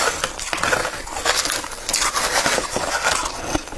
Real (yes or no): yes